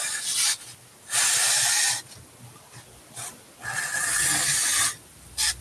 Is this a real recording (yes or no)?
yes